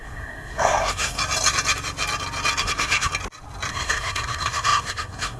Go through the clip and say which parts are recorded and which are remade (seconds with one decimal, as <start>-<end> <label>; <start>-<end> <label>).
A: 0.0-1.2 remade; 1.2-2.6 recorded; 2.6-3.1 remade; 3.1-3.7 recorded; 3.7-5.4 remade